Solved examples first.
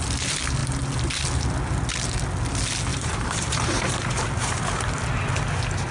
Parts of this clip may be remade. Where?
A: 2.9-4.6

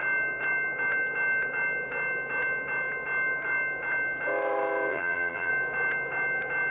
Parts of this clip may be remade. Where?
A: 4.9-5.5

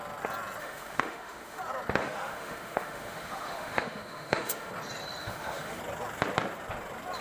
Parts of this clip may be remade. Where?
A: 0.6-1.6; 2.0-4.7; 5.2-5.8

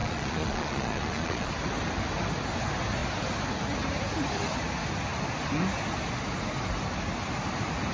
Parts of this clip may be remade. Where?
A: 0.0-1.5